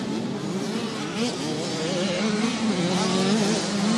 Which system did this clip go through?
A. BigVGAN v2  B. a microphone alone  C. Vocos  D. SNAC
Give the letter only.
B